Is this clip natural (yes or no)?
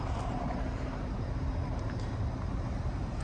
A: no